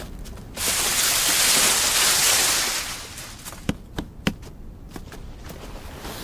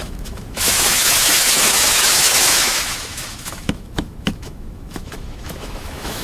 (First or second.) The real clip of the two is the first